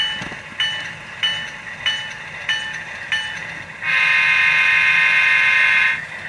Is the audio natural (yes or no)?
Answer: yes